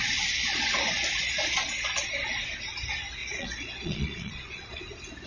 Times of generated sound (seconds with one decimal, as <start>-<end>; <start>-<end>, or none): 3.2-4.8